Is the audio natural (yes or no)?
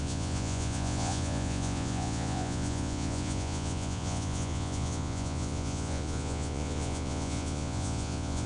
no